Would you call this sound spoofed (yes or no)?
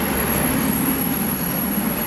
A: no